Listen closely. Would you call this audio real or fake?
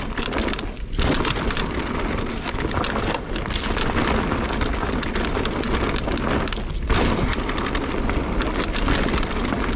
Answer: real